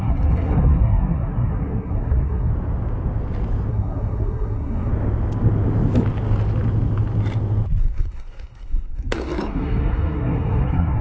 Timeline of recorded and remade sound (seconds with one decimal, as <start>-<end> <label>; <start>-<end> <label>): 0.0-2.5 remade; 2.5-3.7 recorded; 3.7-4.9 remade; 4.9-7.8 recorded; 7.8-11.0 remade